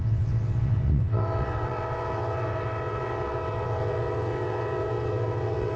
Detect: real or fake fake